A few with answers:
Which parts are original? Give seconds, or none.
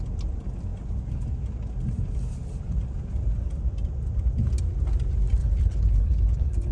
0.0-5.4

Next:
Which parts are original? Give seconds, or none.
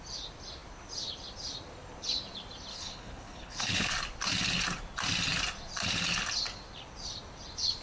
0.0-2.7; 3.9-7.8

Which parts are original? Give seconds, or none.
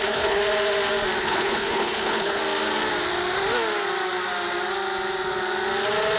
0.4-1.2; 2.4-6.2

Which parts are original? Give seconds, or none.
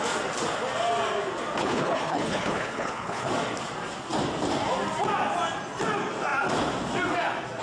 0.0-1.6; 3.3-7.6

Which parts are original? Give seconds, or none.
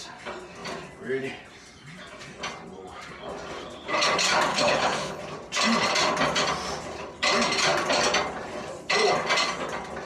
0.0-4.5; 5.2-10.1